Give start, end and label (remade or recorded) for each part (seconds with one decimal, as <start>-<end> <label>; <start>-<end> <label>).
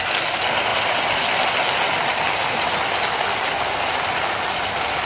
0.0-5.1 recorded